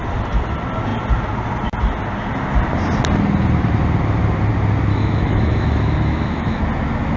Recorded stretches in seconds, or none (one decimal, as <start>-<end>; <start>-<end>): 0.0-4.9; 6.6-7.2

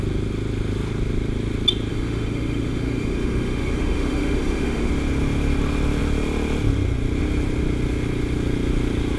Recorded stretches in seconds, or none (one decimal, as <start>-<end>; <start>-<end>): 0.0-1.9; 4.9-9.2

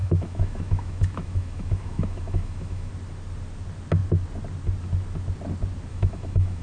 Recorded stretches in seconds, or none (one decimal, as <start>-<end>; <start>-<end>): 2.9-5.9

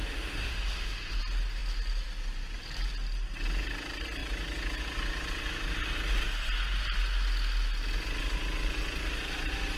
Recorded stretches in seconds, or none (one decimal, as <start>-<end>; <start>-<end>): 1.2-9.8